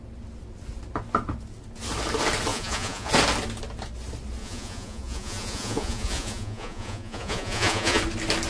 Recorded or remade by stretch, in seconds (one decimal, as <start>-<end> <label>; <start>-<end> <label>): 0.0-2.5 recorded; 2.5-3.1 remade; 3.1-4.4 recorded; 4.4-8.0 remade; 8.0-8.5 recorded